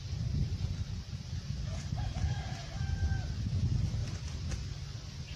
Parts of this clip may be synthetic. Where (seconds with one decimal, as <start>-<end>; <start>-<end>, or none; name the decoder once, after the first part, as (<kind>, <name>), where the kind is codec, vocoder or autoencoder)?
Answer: 1.7-2.8 (vocoder, BigVGAN v2); 4.0-4.5